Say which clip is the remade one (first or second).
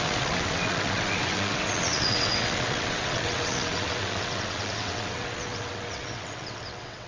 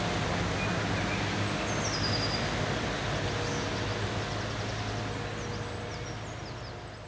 first